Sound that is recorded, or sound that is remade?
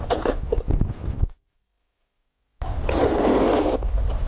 remade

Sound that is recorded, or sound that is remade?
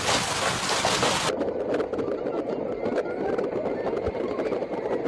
recorded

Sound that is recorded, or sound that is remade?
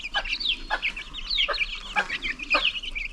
recorded